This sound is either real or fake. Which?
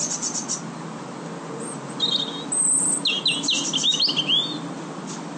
real